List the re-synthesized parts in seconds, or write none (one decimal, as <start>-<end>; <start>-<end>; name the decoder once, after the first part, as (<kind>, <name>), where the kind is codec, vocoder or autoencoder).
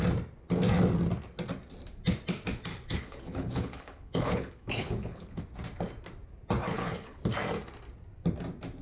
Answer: 2.7-5.4 (codec, HILCodec); 6.7-7.2